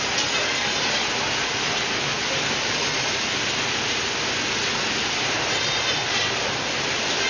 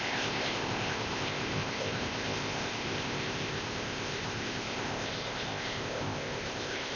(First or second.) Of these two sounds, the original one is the first